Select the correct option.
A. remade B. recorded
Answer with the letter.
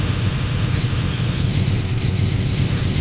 A